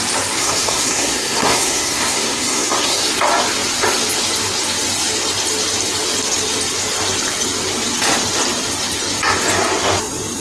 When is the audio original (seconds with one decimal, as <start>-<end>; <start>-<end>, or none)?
0.0-0.4; 3.0-10.4